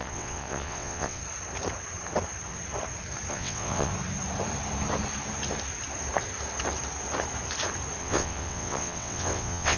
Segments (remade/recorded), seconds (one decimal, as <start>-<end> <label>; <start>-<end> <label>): 0.0-1.2 remade; 1.2-3.3 recorded; 3.3-3.9 remade; 3.9-8.0 recorded; 8.0-9.8 remade